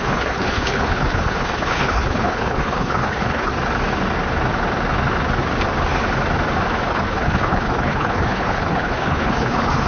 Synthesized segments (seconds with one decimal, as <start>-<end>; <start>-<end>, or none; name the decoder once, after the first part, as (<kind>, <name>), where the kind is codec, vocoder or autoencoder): 0.0-3.5 (codec, HILCodec); 6.9-9.9